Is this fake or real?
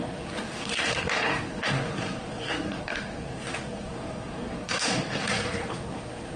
fake